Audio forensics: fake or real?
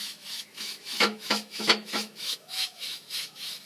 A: fake